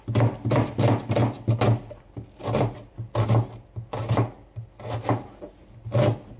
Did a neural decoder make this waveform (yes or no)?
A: no